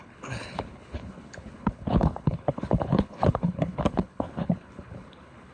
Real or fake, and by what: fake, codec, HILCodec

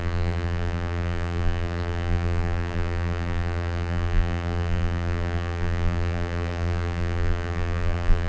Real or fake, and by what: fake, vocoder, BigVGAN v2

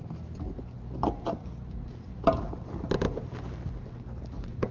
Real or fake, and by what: real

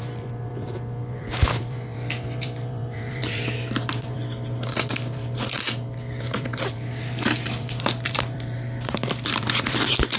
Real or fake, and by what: fake, vocoder, BigVGAN v2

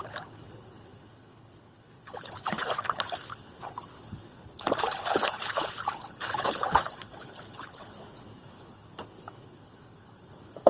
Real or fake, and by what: fake, codec, HILCodec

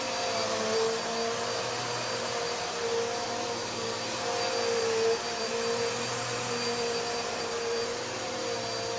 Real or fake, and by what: real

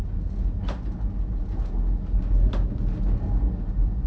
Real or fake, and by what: real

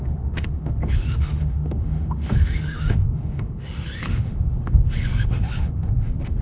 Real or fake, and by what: fake, autoencoder, DAC-VAE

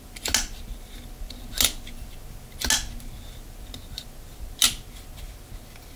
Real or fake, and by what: real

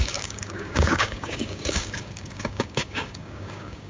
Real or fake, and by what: fake, codec, DAC